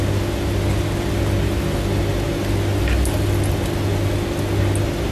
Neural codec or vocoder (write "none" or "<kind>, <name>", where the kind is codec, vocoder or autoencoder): none